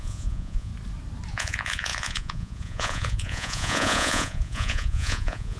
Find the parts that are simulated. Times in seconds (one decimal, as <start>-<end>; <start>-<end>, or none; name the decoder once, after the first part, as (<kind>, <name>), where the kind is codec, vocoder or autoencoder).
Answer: 0.0-0.7 (vocoder, Vocos); 1.3-5.6